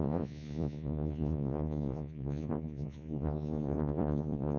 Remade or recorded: remade